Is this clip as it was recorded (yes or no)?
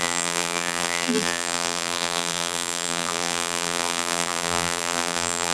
no